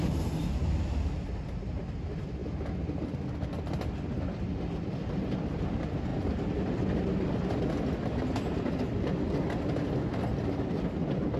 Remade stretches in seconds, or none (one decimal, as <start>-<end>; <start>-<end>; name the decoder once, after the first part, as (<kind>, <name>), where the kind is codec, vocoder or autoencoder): none